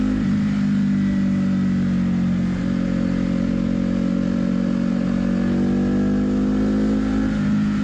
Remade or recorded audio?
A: recorded